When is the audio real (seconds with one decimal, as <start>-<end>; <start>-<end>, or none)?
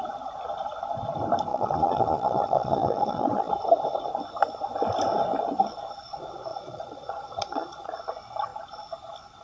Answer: 0.0-1.5; 3.5-6.5; 8.0-9.4